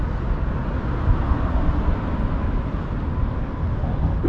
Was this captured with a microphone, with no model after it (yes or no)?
yes